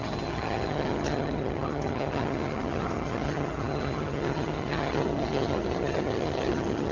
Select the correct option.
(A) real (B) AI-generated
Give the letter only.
B